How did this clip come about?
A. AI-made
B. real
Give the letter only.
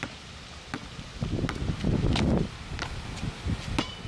B